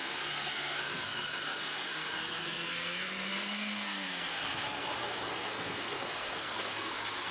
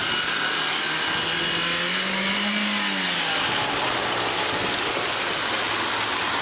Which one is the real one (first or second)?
second